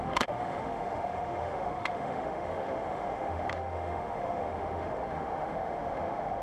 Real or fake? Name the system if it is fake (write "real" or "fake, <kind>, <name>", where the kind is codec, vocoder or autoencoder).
fake, autoencoder, DAC-VAE